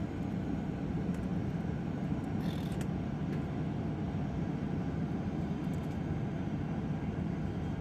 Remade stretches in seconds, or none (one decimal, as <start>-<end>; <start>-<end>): none